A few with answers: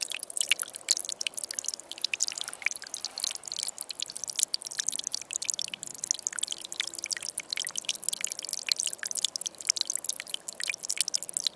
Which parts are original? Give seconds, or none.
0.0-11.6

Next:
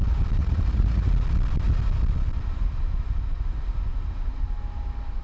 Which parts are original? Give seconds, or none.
0.0-0.4; 1.1-5.2

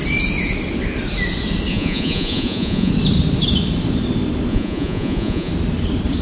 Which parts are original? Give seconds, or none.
0.0-1.7; 2.9-4.5; 5.5-6.2